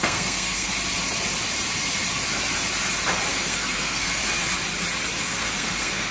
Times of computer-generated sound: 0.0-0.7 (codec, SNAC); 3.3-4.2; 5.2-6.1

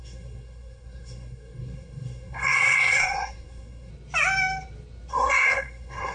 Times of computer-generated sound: 0.0-3.9 (codec, SNAC); 5.1-6.1

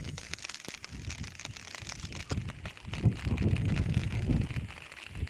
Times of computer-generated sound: 0.0-0.4 (codec, SNAC); 3.6-4.3

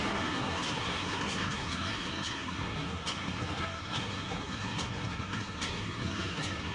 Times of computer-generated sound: 0.0-6.7 (codec, SNAC)

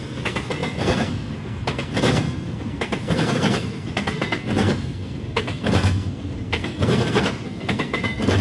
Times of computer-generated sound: 0.0-8.4 (codec, SNAC)

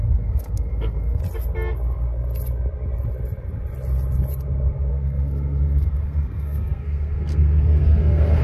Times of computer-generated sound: 0.0-1.2 (codec, SNAC); 4.9-8.4